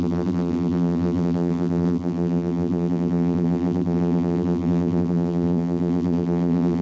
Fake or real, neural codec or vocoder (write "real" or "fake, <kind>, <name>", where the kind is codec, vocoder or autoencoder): fake, vocoder, BigVGAN v2